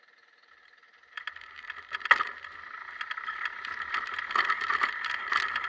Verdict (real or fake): real